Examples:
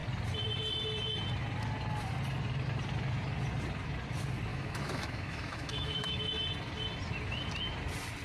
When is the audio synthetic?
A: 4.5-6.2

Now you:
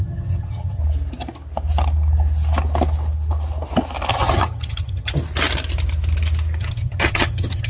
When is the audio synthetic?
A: 0.0-0.8; 4.1-5.1; 6.6-7.7

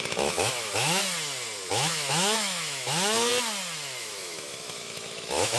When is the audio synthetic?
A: 0.0-1.0; 1.7-3.3; 4.0-5.6